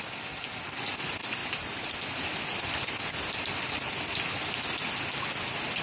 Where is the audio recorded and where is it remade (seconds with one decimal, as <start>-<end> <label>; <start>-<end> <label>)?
0.0-5.8 recorded